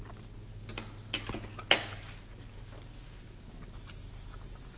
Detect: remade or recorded recorded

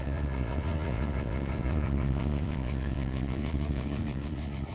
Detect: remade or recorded remade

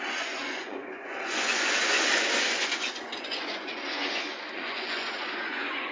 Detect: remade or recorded remade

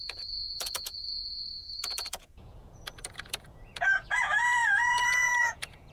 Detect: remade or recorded remade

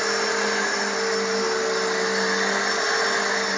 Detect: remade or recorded recorded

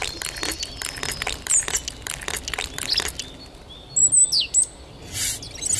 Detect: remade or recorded recorded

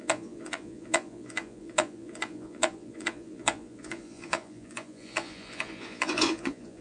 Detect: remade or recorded remade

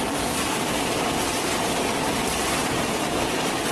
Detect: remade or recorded recorded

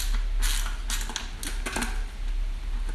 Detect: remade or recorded recorded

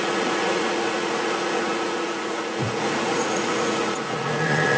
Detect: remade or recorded remade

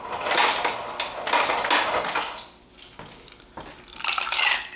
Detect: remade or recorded recorded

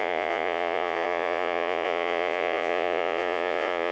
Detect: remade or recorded remade